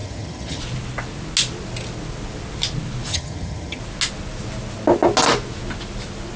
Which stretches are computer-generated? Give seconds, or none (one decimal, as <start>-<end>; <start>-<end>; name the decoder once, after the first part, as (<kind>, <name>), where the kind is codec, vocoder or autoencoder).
0.0-0.6 (vocoder, HiFi-GAN); 3.1-3.8